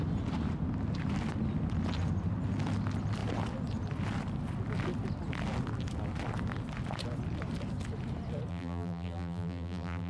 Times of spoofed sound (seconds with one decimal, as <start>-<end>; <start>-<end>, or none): 8.5-10.1